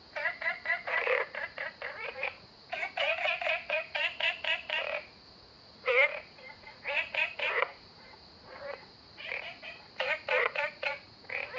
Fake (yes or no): yes